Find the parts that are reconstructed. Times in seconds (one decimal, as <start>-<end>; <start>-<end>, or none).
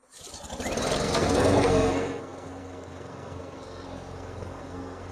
1.0-5.1